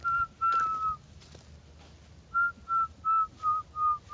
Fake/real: real